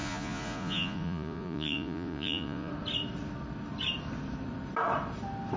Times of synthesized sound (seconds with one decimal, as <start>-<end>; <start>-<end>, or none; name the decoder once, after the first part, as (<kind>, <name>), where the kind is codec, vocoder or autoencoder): 0.0-2.7 (vocoder, Vocos)